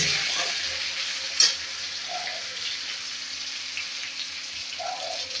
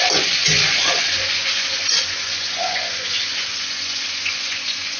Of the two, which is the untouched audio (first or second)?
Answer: first